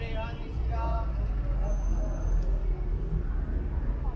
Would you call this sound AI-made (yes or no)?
no